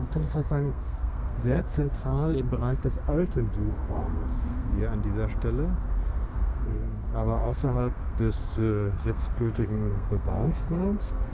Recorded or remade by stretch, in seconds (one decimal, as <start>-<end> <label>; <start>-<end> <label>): 0.0-4.8 remade; 4.8-6.0 recorded; 6.0-11.3 remade